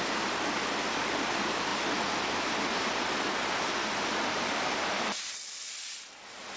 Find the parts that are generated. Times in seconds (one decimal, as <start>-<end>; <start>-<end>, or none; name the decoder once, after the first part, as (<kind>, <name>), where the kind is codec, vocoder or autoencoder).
0.0-1.7 (vocoder, BigVGAN v2); 2.7-6.6